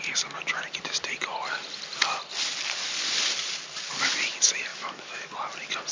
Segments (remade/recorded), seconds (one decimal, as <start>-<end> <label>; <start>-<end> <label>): 0.0-4.7 recorded; 4.7-5.3 remade; 5.3-5.9 recorded